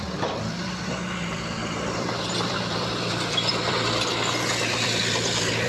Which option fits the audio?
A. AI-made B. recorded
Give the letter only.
A